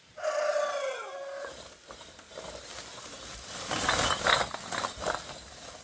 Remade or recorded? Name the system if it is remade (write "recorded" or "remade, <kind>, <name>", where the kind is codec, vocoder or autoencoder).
recorded